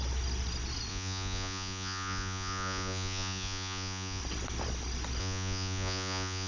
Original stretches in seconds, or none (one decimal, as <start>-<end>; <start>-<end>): 0.0-0.9; 4.2-5.2